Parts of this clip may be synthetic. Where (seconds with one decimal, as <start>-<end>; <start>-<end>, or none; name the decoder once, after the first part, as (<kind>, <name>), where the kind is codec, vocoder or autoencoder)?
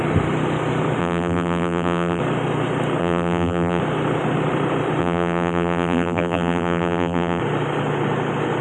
1.0-2.2 (vocoder, BigVGAN v2); 3.0-3.8; 5.0-7.4